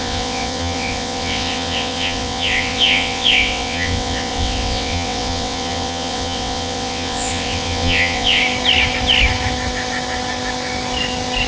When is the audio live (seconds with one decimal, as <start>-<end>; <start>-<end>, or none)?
8.4-11.5